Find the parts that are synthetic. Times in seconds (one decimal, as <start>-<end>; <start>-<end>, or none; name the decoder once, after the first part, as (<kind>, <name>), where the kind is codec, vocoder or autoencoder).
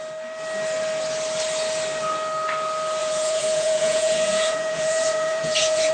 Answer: 3.0-5.9 (vocoder, Vocos)